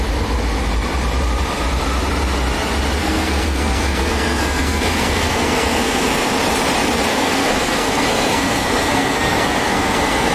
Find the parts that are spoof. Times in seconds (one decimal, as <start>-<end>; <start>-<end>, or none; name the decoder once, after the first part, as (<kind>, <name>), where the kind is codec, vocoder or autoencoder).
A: 3.0-6.3 (codec, SNAC); 7.1-10.3